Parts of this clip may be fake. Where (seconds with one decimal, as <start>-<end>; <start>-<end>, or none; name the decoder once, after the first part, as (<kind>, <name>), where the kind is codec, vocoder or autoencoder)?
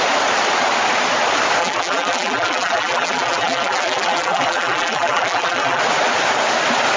1.6-5.8 (vocoder, BigVGAN v2)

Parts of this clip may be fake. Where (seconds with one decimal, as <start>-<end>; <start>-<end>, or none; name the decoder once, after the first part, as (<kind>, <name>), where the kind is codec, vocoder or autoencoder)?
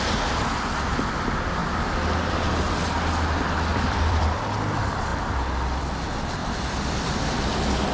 3.7-4.2 (vocoder, BigVGAN v2); 6.4-7.5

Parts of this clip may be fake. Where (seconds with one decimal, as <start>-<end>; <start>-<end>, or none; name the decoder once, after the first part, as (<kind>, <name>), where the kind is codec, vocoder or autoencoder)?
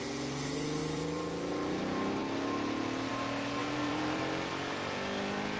0.8-1.8 (vocoder, BigVGAN v2); 3.6-4.5